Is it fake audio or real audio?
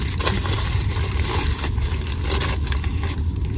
real